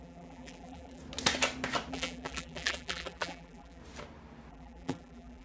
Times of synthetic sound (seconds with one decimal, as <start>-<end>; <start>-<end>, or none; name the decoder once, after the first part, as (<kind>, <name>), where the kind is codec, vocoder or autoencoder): 0.0-1.0 (vocoder, BigVGAN v2); 1.9-3.8; 4.5-5.4